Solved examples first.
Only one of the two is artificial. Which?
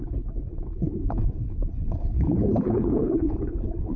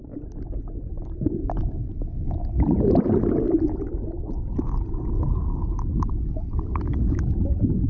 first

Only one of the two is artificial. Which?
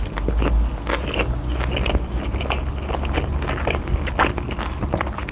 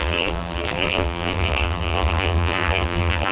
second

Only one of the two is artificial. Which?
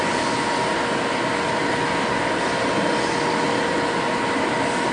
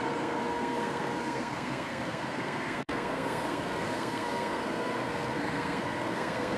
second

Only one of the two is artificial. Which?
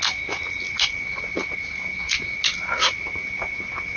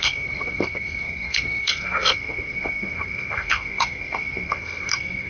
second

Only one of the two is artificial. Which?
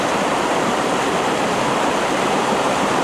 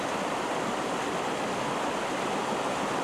first